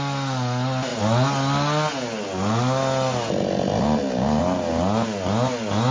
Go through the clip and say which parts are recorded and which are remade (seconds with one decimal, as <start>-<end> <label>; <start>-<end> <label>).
0.0-5.9 recorded